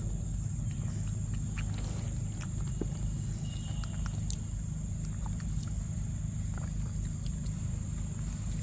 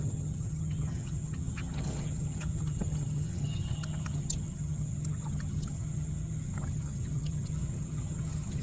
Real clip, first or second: first